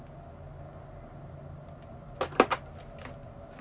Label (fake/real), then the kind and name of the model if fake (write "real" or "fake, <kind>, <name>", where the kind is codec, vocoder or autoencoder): real